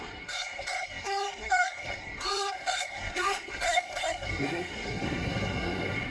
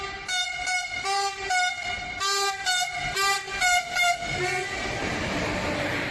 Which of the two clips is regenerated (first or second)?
first